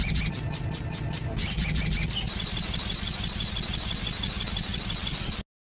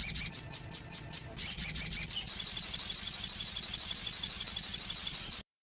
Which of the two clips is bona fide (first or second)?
first